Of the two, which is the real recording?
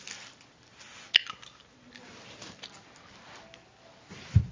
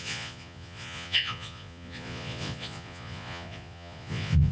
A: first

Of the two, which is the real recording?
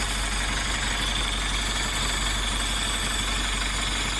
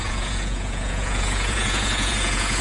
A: first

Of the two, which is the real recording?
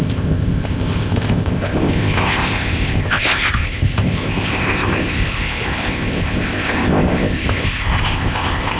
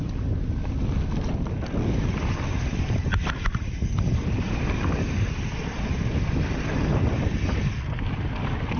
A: second